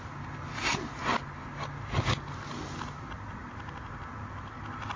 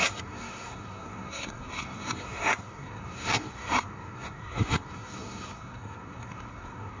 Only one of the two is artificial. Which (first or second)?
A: second